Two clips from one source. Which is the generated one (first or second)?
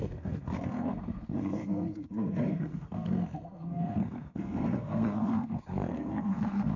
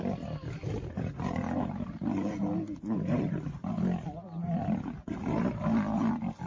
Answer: first